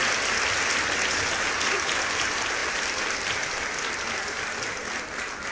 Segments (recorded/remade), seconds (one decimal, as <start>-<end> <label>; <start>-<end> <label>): 0.0-5.5 recorded